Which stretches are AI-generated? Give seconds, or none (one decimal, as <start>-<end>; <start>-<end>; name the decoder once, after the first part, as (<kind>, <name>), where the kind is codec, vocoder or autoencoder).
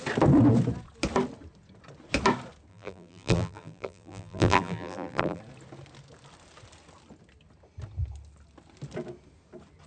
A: 2.7-5.4 (vocoder, BigVGAN v2)